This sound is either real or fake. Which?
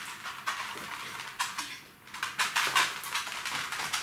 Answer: real